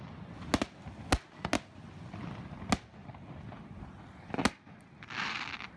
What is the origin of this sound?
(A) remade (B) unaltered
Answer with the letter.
B